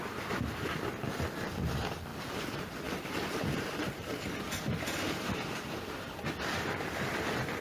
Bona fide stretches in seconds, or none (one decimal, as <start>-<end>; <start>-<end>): 0.0-2.1; 5.9-7.6